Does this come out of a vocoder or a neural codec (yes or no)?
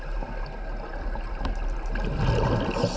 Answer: no